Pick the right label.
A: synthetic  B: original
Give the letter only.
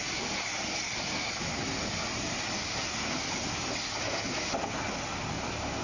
B